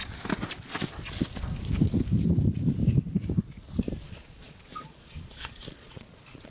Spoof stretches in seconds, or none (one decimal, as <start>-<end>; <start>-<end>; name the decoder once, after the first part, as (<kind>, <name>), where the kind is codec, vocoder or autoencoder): 4.0-6.5 (vocoder, Vocos)